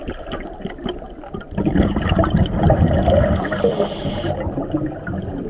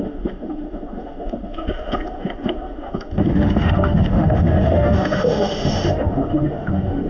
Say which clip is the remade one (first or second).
second